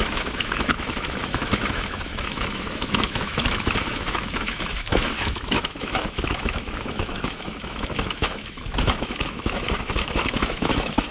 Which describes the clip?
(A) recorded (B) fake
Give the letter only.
B